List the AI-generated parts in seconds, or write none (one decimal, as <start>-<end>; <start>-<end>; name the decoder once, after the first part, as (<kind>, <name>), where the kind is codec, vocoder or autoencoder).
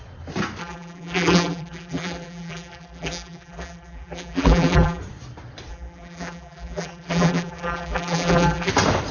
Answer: 0.6-5.0 (vocoder, BigVGAN v2); 5.7-8.7